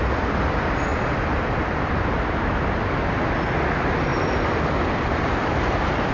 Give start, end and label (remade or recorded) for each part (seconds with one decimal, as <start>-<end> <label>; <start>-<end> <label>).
0.0-0.9 recorded; 0.9-2.8 remade; 2.8-4.1 recorded; 4.1-6.1 remade